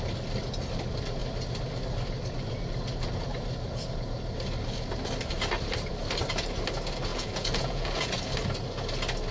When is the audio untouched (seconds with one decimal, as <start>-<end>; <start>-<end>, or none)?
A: 0.0-7.1; 8.1-9.3